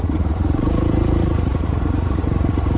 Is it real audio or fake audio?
fake